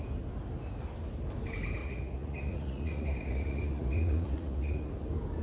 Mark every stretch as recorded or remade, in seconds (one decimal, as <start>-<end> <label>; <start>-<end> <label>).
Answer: 0.0-1.8 recorded; 1.8-4.9 remade; 4.9-5.4 recorded